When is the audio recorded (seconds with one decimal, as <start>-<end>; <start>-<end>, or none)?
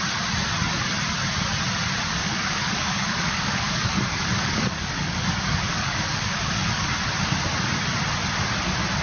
0.0-2.2; 6.9-9.0